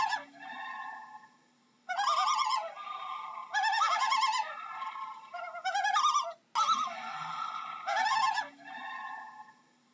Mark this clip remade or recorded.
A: recorded